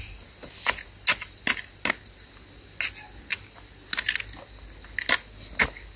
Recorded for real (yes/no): yes